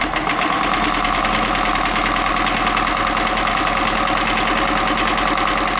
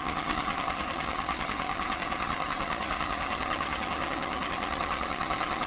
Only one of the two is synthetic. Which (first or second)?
second